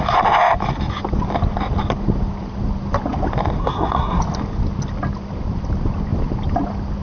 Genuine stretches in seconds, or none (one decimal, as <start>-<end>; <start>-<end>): 0.0-3.6; 4.2-7.0